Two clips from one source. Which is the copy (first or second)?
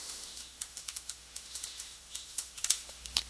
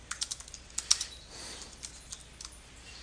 first